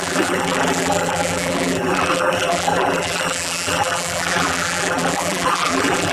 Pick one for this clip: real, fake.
fake